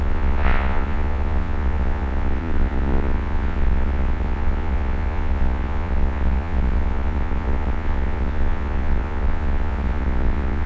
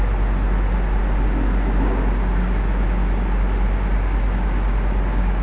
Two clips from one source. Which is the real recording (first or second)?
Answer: second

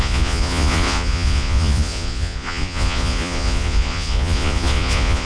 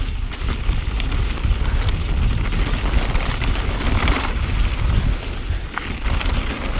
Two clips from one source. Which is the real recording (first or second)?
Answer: second